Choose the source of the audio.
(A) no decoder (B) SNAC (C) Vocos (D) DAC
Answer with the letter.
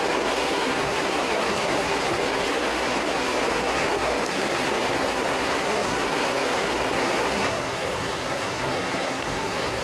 B